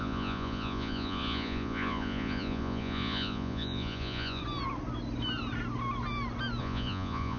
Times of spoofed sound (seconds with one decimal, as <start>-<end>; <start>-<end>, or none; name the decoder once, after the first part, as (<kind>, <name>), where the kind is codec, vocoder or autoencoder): 0.0-4.4 (vocoder, Vocos); 6.6-7.4